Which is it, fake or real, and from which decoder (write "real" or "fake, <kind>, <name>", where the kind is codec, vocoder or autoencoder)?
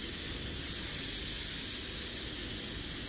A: real